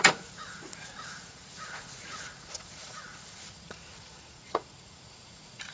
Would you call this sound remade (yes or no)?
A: yes